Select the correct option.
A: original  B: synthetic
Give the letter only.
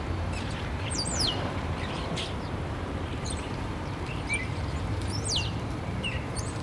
B